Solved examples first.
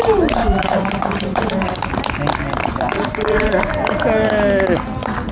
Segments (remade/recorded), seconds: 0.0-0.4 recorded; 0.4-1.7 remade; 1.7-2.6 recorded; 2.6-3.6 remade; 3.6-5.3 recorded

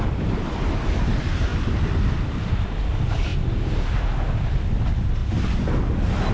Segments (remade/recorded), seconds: 0.0-6.3 recorded

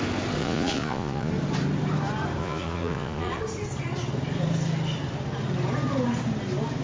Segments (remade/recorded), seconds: 0.0-0.4 recorded; 0.4-1.3 remade; 1.3-2.4 recorded; 2.4-3.4 remade; 3.4-6.8 recorded